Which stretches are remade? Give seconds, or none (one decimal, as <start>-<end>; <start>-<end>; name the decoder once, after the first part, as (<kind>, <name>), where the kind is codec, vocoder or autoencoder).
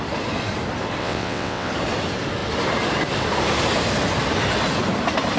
1.0-1.7 (vocoder, WaveNeXt)